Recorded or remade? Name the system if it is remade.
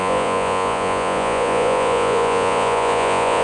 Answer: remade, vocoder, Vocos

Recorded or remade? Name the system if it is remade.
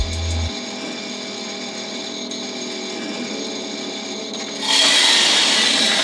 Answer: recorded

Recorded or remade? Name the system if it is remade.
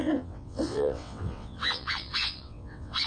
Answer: remade, vocoder, WaveNeXt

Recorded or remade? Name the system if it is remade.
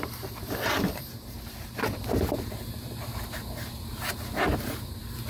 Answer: remade, vocoder, BigVGAN v2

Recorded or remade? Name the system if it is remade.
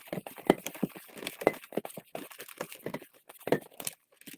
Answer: recorded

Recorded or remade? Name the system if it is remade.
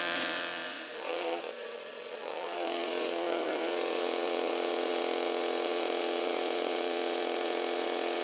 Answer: remade, vocoder, Vocos